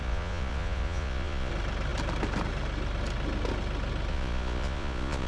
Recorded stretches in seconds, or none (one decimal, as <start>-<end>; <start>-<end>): 1.5-4.1